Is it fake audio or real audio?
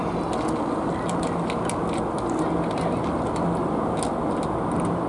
real